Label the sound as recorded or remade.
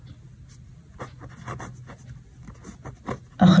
recorded